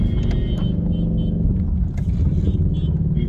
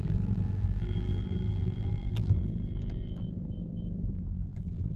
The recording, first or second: first